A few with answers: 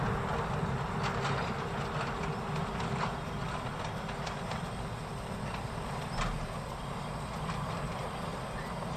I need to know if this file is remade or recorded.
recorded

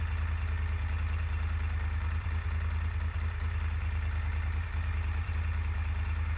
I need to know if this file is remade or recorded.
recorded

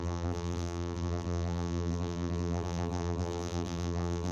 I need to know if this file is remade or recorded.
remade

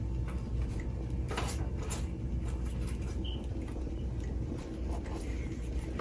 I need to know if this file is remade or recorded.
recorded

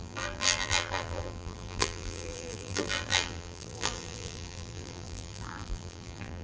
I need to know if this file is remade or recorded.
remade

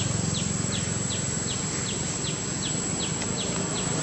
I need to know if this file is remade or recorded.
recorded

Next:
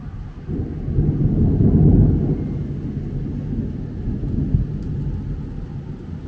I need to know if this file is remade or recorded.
recorded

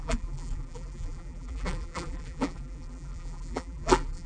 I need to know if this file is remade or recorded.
remade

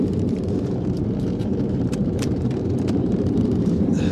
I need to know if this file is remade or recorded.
remade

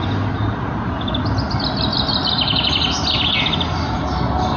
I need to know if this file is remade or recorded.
recorded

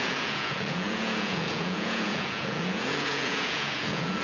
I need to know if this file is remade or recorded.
remade